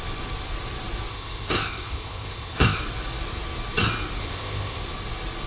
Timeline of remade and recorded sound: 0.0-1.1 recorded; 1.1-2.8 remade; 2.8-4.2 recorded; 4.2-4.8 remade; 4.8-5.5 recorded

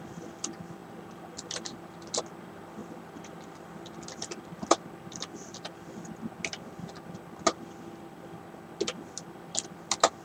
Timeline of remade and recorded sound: 0.0-0.8 recorded; 0.8-2.2 remade; 2.2-2.8 recorded; 2.8-5.5 remade; 5.5-10.2 recorded